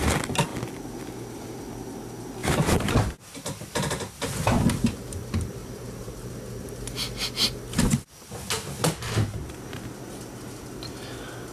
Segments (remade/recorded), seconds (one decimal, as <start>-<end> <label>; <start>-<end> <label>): 0.0-2.4 recorded; 2.4-2.9 remade; 2.9-5.6 recorded; 5.6-6.3 remade; 6.3-11.5 recorded